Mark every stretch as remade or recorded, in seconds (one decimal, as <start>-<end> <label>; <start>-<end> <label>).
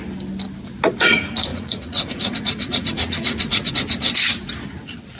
0.0-1.5 recorded; 1.5-3.7 remade; 3.7-5.2 recorded